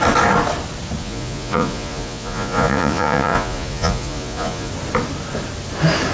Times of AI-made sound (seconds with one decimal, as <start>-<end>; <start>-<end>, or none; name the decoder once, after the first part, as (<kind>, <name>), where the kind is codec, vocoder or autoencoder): 1.0-4.7 (vocoder, Vocos)